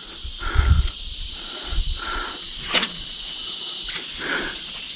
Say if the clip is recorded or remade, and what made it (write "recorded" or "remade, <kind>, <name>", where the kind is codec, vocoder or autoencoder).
remade, vocoder, Vocos